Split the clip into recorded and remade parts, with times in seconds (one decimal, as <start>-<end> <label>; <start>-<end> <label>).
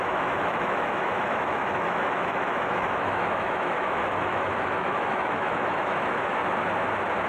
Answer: 0.0-6.4 remade; 6.4-7.3 recorded